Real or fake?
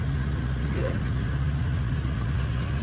fake